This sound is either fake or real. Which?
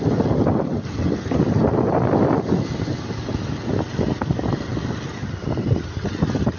real